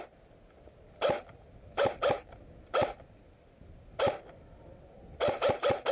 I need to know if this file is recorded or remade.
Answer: remade